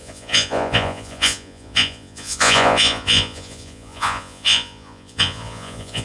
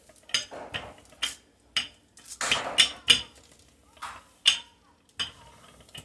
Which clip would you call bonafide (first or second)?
second